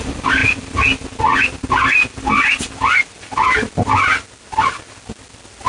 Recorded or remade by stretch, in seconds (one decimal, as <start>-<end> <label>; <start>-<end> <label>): 0.0-5.7 recorded